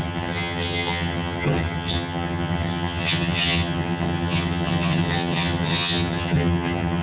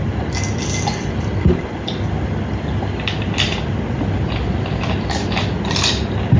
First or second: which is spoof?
first